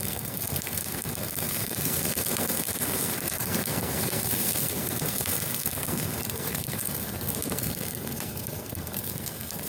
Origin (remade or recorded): remade